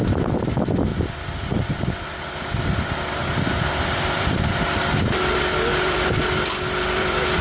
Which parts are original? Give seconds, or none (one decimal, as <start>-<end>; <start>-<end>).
none